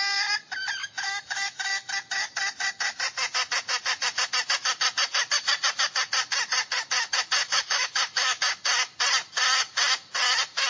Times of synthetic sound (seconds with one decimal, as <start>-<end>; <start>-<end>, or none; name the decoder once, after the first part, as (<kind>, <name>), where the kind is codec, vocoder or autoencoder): 0.8-1.9 (autoencoder, DAC-VAE); 7.4-8.4